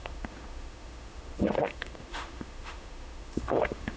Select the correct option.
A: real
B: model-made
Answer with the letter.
B